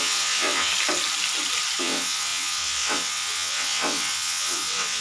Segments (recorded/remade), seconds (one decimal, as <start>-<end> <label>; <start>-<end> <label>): 0.0-0.7 remade; 0.7-1.8 recorded; 1.8-5.0 remade

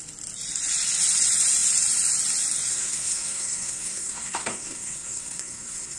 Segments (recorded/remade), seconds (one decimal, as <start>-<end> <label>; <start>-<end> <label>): 0.0-2.7 recorded; 2.7-6.0 remade

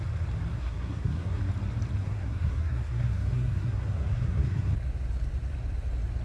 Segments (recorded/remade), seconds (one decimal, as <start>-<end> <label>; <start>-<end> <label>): 0.0-0.5 recorded; 0.5-1.4 remade; 1.4-2.0 recorded; 2.0-4.7 remade; 4.7-6.2 recorded

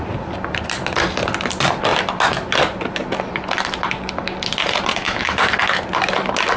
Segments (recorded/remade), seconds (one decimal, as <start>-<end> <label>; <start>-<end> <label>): 0.0-4.9 recorded; 4.9-5.4 remade; 5.4-6.6 recorded

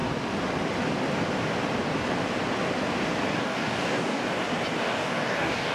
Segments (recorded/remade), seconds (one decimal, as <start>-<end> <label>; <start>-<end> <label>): 0.0-3.4 recorded; 3.4-4.2 remade; 4.2-4.8 recorded; 4.8-5.7 remade

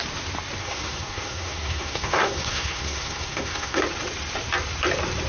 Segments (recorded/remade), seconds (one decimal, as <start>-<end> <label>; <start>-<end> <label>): 0.0-0.6 recorded; 0.6-3.8 remade; 3.8-5.3 recorded